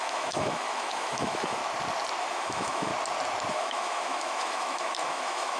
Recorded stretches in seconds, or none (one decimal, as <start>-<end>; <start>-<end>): 1.6-2.2; 2.9-3.5